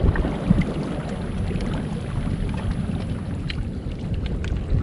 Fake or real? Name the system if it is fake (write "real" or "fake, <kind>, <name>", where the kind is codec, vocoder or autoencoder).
real